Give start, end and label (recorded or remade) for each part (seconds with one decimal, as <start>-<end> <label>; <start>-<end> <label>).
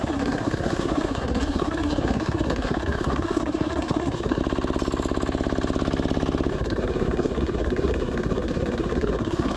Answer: 0.0-4.4 remade; 4.4-6.5 recorded; 6.5-9.6 remade